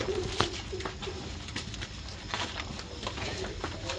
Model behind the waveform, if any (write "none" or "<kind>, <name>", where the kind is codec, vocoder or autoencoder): none